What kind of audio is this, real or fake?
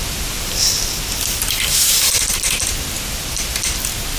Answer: real